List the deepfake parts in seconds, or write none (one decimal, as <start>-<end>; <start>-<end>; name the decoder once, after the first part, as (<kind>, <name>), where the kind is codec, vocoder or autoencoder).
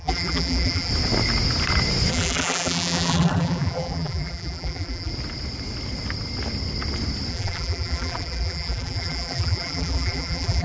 0.0-0.9 (vocoder, BigVGAN v2); 2.1-5.1; 7.3-10.6